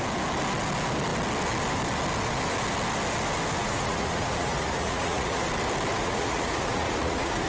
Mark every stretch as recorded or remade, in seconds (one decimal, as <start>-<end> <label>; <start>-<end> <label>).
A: 0.0-3.6 recorded; 3.6-5.5 remade; 5.5-6.0 recorded; 6.0-7.5 remade